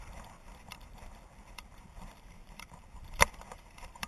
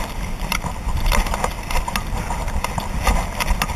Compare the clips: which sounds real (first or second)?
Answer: second